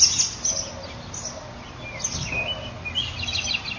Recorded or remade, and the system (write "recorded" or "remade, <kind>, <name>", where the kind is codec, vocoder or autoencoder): recorded